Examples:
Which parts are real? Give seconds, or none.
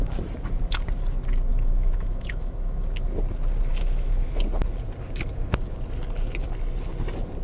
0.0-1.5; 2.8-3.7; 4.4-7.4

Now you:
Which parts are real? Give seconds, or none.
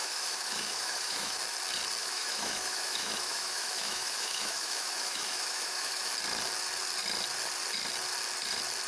1.4-2.0; 6.1-8.9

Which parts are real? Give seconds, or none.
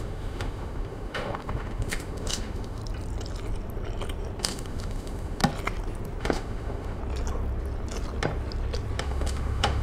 2.8-4.4; 5.4-6.2; 7.0-9.0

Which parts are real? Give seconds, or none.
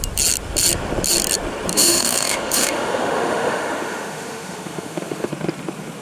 0.0-1.7; 5.3-6.0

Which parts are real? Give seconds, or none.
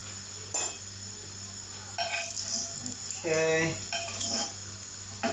0.0-4.0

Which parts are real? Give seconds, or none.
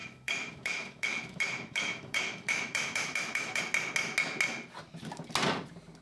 3.6-6.0